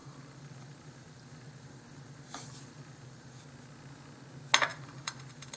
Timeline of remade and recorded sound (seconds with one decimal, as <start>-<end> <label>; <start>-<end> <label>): 0.0-3.4 remade; 3.4-4.7 recorded; 4.7-5.6 remade